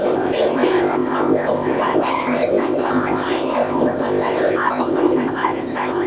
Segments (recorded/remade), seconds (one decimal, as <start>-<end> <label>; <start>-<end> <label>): 0.0-6.1 remade